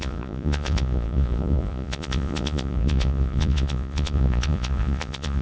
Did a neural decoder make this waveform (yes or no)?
yes